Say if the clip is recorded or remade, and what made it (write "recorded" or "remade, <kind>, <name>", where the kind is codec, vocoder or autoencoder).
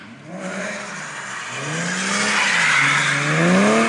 recorded